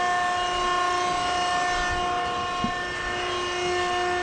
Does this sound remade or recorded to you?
recorded